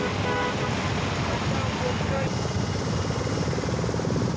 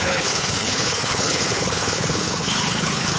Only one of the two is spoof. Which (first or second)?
second